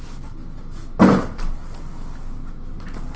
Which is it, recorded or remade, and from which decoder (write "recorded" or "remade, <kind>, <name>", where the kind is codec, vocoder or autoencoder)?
recorded